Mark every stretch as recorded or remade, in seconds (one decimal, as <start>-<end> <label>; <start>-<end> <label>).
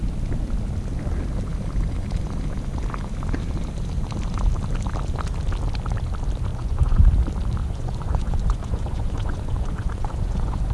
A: 0.0-6.5 recorded; 6.5-7.1 remade; 7.1-7.6 recorded; 7.6-10.7 remade